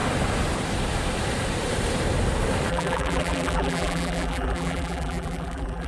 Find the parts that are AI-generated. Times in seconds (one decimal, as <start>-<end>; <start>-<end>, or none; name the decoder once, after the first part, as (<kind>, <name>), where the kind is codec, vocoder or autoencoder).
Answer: 2.7-5.9 (vocoder, BigVGAN v2)